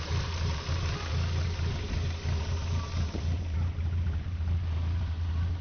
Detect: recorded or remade recorded